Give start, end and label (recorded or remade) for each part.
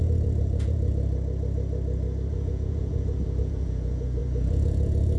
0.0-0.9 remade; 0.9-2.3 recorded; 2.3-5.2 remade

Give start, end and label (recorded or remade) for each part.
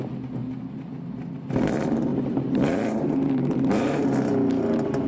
0.0-2.1 recorded; 2.1-4.0 remade; 4.0-5.1 recorded